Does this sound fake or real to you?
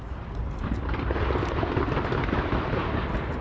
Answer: real